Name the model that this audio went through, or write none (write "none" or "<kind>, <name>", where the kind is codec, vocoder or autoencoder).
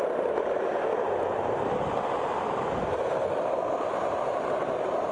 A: none